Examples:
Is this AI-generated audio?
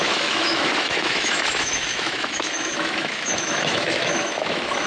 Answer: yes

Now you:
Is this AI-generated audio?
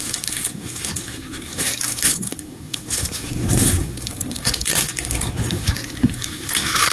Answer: yes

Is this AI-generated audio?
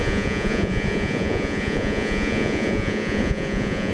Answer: yes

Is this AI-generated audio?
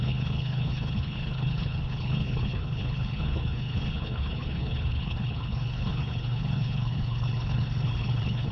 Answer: yes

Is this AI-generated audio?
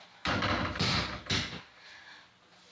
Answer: no